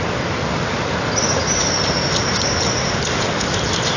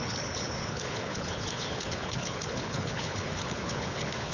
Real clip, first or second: first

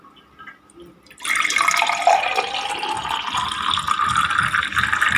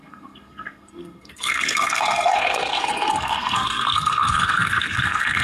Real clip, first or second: first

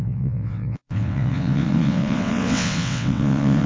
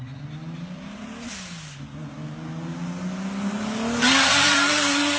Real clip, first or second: second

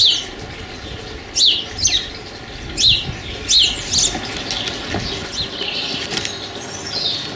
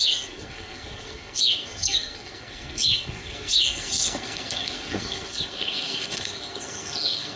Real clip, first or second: first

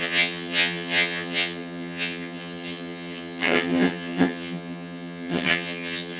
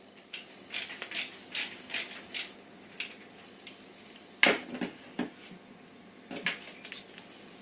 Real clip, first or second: second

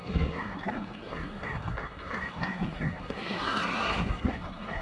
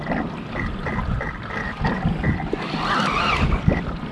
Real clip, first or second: second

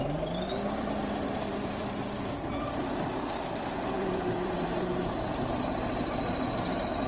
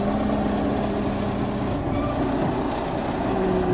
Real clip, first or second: second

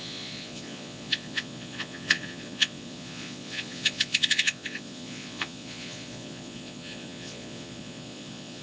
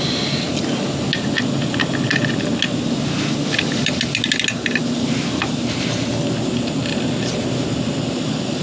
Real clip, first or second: second